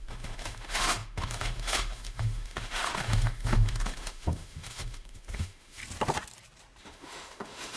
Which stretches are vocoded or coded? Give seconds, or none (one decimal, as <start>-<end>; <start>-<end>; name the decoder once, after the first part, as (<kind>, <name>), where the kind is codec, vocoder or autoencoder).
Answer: 0.0-5.8 (autoencoder, DAC-VAE); 6.8-7.8